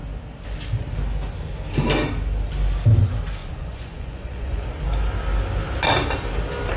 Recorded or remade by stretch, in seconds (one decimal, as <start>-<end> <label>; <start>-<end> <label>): 0.0-3.4 recorded; 3.4-4.7 remade; 4.7-6.8 recorded